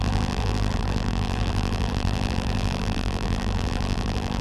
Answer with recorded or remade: remade